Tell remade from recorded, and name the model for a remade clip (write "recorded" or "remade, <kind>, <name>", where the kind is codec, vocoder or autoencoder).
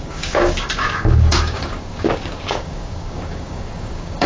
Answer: remade, codec, DAC